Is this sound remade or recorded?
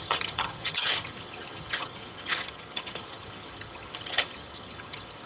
remade